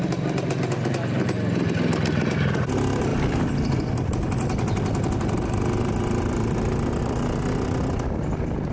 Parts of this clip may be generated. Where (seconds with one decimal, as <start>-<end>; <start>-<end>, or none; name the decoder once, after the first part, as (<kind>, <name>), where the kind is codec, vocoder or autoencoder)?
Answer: none